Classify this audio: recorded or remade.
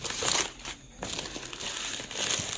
recorded